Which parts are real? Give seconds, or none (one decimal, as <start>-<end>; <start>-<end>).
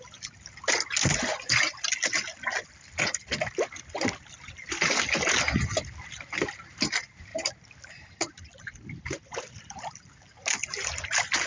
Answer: 0.0-11.5